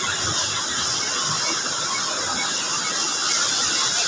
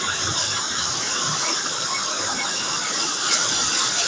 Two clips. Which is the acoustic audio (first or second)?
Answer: first